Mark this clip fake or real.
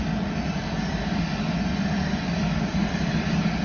real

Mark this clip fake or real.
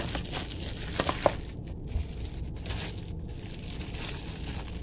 real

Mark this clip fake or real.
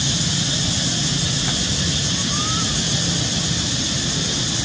real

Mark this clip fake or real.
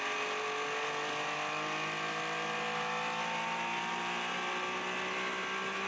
real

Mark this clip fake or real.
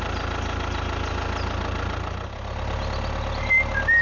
real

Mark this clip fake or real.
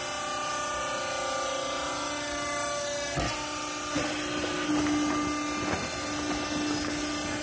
real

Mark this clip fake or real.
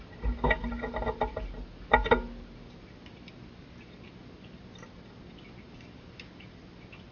real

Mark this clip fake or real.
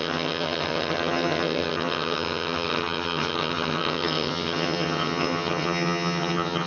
fake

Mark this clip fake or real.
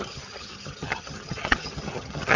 fake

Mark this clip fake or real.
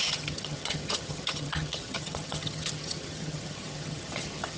fake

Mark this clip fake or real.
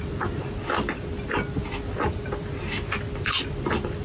real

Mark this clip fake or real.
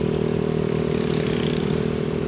real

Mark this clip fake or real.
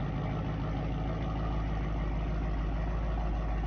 real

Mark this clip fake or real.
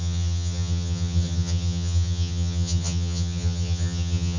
fake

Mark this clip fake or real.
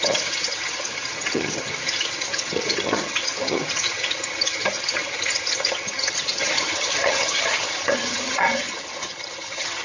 fake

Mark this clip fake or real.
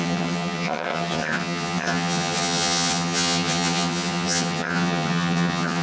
fake